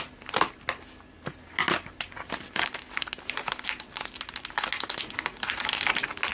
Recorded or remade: recorded